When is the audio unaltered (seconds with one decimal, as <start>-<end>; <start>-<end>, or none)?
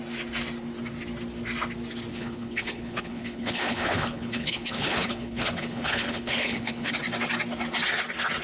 0.0-2.1; 6.9-8.4